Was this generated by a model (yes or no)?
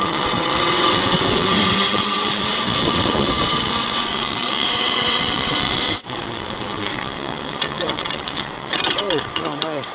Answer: yes